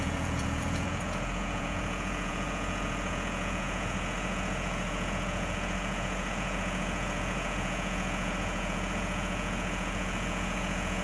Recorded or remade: remade